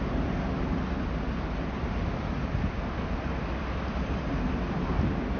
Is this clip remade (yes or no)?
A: no